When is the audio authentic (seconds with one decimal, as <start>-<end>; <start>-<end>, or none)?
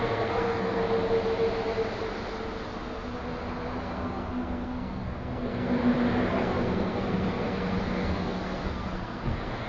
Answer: 0.8-3.8; 5.8-6.3